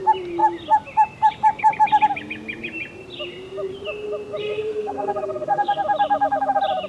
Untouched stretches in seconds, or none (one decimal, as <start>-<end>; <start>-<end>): 0.0-4.4; 5.8-6.9